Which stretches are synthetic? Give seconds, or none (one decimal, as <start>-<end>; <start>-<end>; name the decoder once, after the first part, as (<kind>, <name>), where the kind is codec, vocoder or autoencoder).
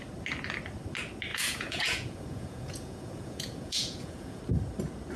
1.3-4.4 (vocoder, Vocos)